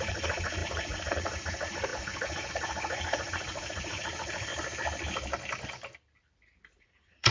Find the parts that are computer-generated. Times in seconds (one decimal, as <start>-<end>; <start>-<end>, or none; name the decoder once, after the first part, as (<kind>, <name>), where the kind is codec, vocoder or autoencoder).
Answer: 0.0-4.5 (vocoder, Vocos); 6.8-7.3